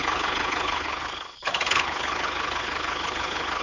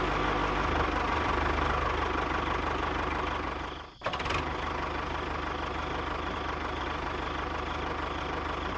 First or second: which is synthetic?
first